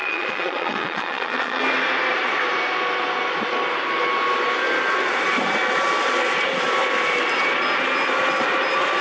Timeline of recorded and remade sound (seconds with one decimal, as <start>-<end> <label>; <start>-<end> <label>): 0.0-1.6 remade; 1.6-9.0 recorded